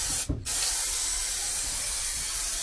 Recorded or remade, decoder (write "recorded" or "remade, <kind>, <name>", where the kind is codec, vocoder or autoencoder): recorded